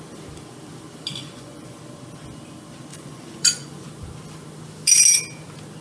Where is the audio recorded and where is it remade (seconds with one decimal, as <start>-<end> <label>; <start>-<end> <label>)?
0.0-1.1 recorded; 1.1-1.8 remade; 1.8-2.9 recorded; 2.9-3.9 remade; 3.9-5.8 recorded

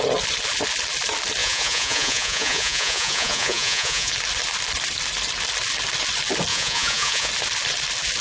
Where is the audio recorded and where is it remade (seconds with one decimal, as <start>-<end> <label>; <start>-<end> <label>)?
0.0-1.4 recorded; 1.4-4.1 remade; 4.1-6.5 recorded; 6.5-7.3 remade; 7.3-8.2 recorded

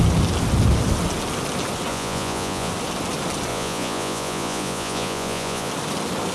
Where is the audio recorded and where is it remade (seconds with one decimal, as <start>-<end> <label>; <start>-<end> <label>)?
0.0-1.9 recorded; 1.9-2.7 remade; 2.7-3.5 recorded; 3.5-5.7 remade; 5.7-6.3 recorded